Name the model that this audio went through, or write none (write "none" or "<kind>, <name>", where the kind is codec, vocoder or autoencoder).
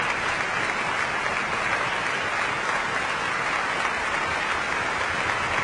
none